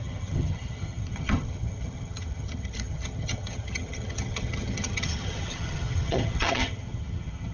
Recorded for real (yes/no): no